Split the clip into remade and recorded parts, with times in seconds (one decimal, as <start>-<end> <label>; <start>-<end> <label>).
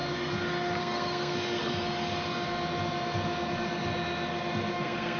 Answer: 0.0-0.8 recorded; 0.8-1.6 remade; 1.6-4.7 recorded; 4.7-5.2 remade